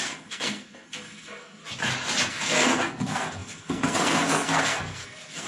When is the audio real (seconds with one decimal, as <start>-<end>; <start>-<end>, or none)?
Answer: 1.6-2.3

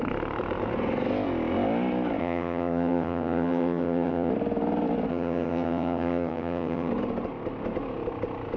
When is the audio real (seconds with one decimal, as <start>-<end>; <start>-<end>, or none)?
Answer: 0.0-2.2; 4.3-5.1; 6.9-8.6

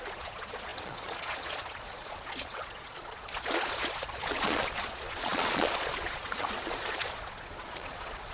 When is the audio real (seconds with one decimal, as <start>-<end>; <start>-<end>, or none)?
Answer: none

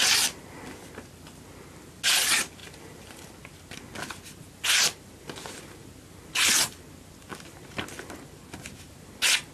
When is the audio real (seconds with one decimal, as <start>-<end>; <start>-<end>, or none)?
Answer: 0.0-9.5

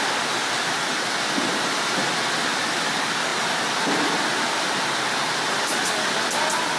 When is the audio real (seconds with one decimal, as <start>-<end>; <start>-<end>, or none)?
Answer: 0.0-6.8